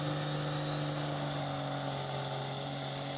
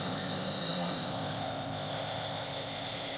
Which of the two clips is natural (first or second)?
first